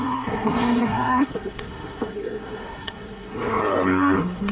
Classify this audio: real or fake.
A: fake